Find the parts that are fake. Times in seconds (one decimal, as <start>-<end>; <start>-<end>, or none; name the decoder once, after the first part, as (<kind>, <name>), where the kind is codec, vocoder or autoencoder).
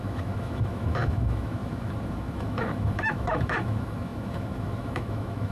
0.0-5.5 (autoencoder, DAC-VAE)